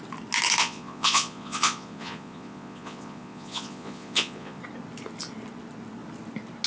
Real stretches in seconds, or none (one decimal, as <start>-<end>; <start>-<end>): 0.0-0.6; 4.6-6.7